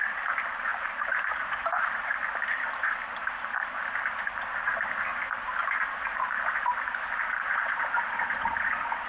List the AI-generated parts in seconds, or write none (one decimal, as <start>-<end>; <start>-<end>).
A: 0.7-2.1